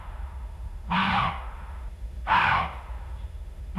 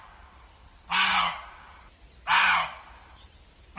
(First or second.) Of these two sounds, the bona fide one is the second